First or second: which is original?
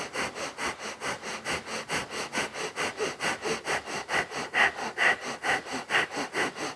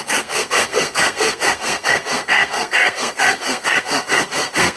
first